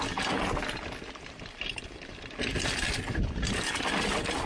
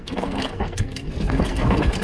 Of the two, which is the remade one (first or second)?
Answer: second